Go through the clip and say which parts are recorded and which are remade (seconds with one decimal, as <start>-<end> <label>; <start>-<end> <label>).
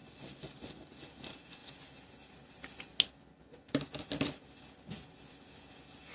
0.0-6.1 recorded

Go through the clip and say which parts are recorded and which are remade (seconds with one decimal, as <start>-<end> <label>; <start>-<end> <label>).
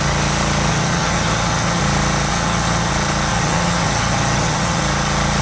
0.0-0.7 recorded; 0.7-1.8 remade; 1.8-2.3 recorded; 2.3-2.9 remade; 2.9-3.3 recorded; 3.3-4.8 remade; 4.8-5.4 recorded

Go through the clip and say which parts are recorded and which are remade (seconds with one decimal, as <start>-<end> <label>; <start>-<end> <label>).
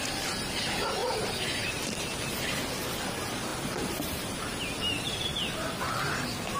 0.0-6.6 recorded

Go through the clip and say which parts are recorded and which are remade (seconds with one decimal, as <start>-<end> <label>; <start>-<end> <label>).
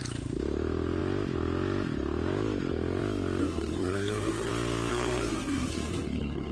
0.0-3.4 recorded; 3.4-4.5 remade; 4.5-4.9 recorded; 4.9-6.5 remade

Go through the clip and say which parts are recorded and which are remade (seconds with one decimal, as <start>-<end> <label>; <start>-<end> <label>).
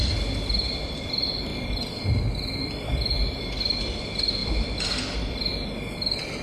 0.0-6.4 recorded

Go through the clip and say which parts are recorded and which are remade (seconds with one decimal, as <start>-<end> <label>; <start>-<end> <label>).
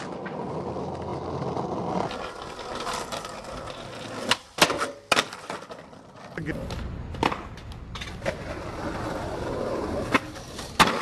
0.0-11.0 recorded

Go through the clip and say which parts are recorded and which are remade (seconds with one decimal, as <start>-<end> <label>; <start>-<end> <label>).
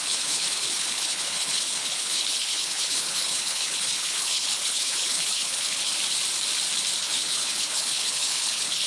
0.0-5.9 remade; 5.9-7.0 recorded; 7.0-8.9 remade